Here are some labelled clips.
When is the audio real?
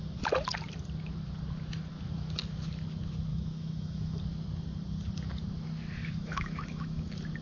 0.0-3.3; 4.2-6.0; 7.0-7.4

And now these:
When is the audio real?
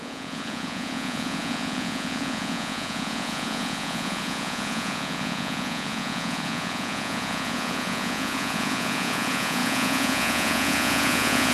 none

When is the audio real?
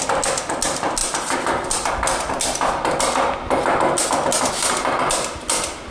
0.0-5.9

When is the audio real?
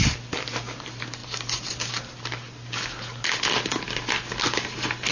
0.0-5.1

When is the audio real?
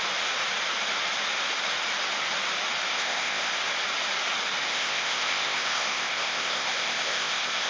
0.0-2.9; 3.5-4.7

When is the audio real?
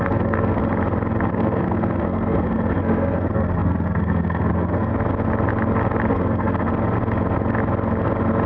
0.6-1.3; 4.9-6.1; 6.7-8.5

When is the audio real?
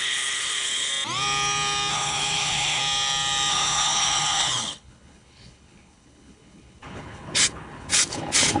0.9-1.9; 2.8-3.5